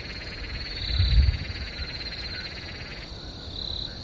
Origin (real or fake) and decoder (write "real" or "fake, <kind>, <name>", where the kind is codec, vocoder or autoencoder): real